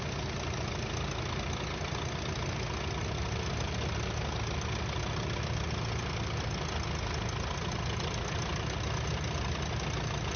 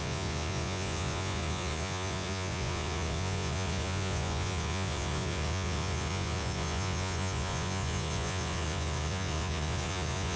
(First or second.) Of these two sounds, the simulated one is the second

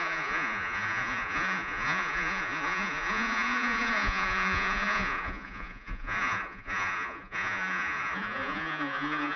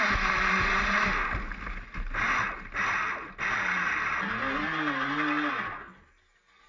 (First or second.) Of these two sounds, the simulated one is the first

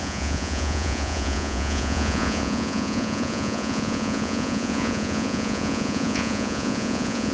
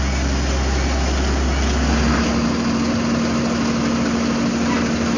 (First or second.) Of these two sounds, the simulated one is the first